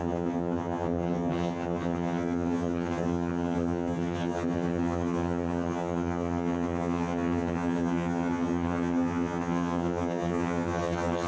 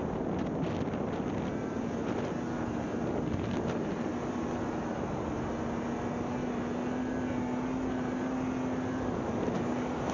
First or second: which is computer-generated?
first